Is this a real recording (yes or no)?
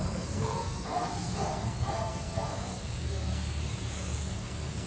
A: no